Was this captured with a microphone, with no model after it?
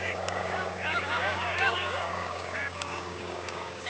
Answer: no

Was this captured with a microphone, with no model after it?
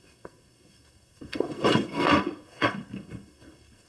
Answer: no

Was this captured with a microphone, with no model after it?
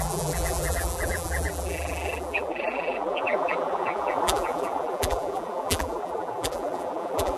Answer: no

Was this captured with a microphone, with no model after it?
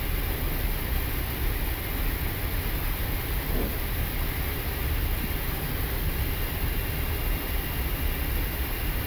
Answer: yes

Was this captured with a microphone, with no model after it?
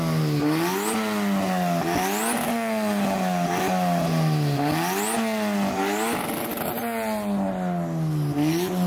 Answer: yes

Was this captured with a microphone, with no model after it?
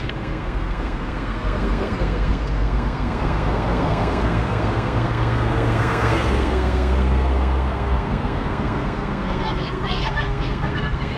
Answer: no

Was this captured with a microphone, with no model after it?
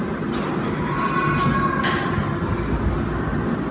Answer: yes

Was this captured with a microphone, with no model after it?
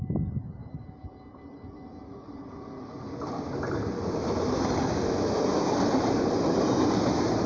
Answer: yes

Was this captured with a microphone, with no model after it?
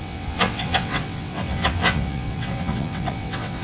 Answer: no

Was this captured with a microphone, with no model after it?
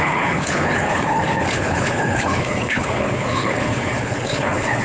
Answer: no